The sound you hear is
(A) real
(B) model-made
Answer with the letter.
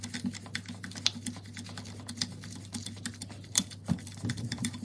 A